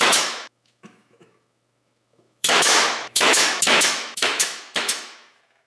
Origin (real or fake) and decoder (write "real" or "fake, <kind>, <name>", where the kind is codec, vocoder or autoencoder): fake, autoencoder, DAC-VAE